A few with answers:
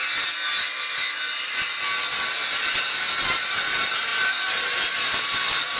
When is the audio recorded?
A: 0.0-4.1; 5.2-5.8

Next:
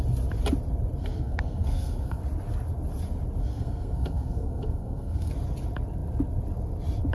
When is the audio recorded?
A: 0.0-1.0; 2.2-3.4; 5.3-7.1

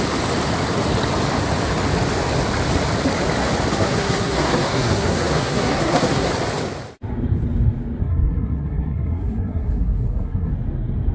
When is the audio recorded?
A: 0.0-3.7; 6.3-8.0; 10.5-11.1

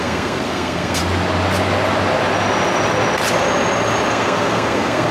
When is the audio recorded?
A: 1.0-4.1